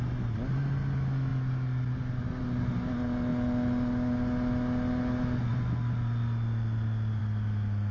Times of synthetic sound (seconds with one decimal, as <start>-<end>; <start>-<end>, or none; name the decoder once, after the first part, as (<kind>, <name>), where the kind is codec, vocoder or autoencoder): none